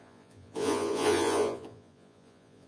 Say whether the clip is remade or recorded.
remade